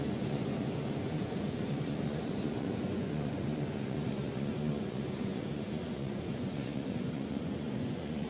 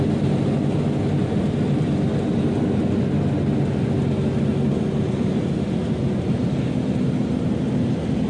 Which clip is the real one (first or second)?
second